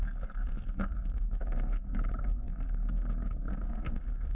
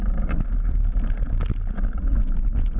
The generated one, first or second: first